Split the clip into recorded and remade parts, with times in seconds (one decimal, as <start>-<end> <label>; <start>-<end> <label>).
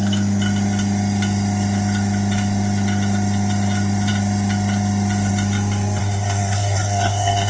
0.0-6.0 recorded; 6.0-7.5 remade